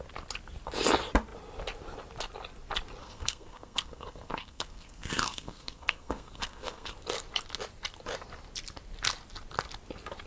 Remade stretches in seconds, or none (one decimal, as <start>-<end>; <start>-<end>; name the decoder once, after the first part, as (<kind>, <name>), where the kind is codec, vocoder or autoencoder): 3.0-6.9 (codec, SNAC)